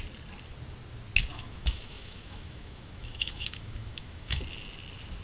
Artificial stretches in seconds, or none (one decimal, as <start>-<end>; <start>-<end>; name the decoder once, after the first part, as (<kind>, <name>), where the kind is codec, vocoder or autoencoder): 1.3-4.4 (autoencoder, DAC-VAE)